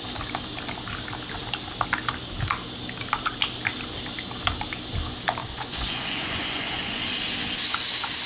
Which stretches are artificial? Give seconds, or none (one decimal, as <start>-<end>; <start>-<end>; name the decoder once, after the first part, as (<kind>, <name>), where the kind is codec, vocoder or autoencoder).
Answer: 5.4-7.0 (vocoder, Vocos)